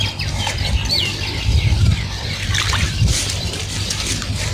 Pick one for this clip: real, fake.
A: real